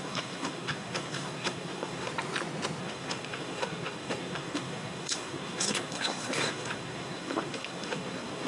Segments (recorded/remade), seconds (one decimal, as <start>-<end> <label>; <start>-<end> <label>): 0.0-2.1 remade; 2.1-2.8 recorded; 2.8-8.5 remade